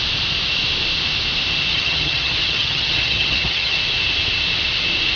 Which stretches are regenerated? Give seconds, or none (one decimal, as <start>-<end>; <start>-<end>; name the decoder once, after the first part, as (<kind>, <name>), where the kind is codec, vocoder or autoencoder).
1.7-3.8 (vocoder, HiFi-GAN)